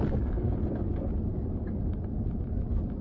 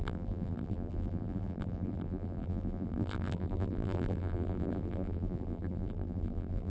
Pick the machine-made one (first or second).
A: second